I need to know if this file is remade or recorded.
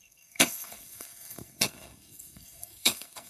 remade